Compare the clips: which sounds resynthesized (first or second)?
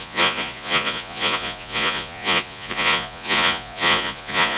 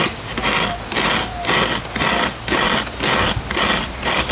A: first